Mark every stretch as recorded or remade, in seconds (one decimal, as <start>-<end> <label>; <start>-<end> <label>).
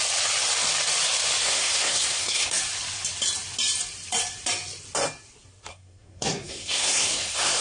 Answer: 0.0-1.4 recorded; 1.4-2.6 remade; 2.6-5.7 recorded; 5.7-7.6 remade